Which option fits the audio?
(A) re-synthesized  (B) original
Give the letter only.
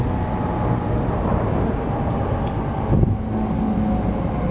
B